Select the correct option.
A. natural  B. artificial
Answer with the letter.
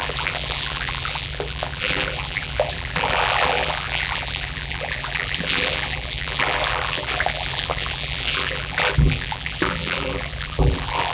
B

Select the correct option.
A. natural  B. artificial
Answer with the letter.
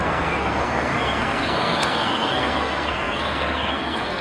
B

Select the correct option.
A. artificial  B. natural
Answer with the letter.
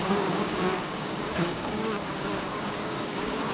A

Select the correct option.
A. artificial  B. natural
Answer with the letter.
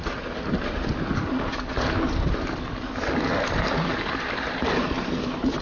B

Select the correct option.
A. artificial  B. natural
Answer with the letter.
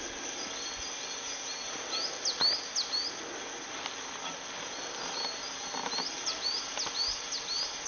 B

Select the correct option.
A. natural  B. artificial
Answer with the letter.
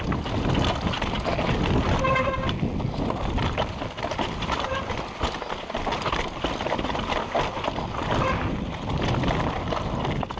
A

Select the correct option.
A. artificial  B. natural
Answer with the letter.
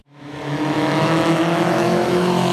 A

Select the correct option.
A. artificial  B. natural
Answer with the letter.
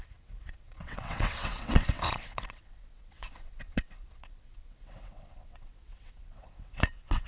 A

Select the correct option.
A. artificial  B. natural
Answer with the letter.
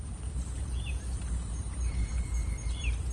A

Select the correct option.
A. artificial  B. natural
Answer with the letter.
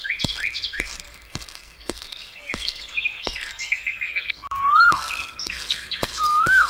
A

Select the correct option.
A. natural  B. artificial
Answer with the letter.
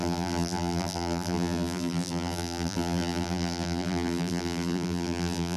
B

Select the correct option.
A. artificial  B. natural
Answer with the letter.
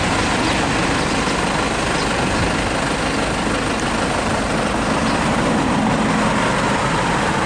B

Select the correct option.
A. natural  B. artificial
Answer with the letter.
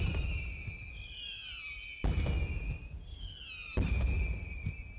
A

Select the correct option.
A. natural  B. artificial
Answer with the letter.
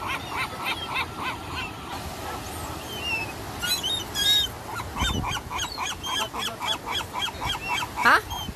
A